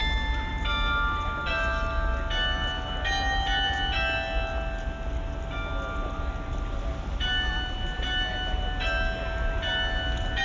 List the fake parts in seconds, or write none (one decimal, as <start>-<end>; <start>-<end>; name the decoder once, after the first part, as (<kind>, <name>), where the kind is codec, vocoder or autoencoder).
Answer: none